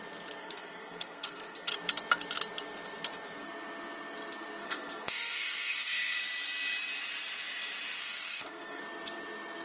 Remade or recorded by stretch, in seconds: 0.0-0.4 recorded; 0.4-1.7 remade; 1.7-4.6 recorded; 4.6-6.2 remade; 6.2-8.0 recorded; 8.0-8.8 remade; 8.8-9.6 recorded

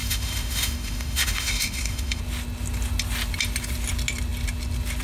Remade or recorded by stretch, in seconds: 0.0-2.2 remade; 2.2-5.0 recorded

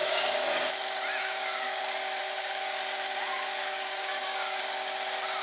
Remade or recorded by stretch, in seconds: 0.0-0.7 remade; 0.7-1.2 recorded; 1.2-1.8 remade; 1.8-2.2 recorded; 2.2-2.8 remade; 2.8-3.6 recorded; 3.6-4.6 remade; 4.6-5.4 recorded

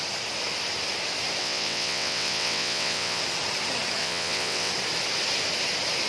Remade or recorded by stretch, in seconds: 0.0-1.4 recorded; 1.4-3.2 remade; 3.2-4.0 recorded; 4.0-4.7 remade; 4.7-6.1 recorded